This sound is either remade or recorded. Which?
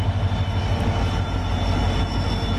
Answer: recorded